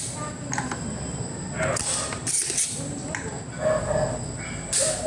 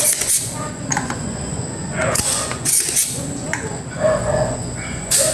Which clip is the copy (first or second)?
second